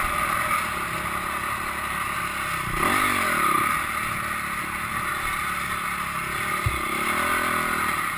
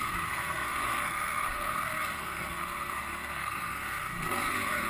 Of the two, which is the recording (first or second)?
first